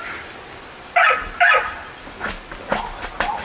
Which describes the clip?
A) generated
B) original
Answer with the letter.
B